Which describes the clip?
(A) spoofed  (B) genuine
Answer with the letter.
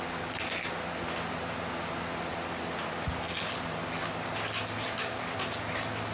B